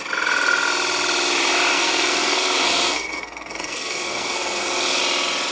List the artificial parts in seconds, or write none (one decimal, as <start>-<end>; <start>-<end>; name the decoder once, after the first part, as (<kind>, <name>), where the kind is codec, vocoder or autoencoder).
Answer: 1.7-5.0 (codec, SNAC)